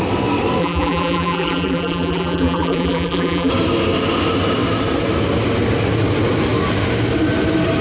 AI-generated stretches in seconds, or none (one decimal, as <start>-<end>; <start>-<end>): 0.6-3.5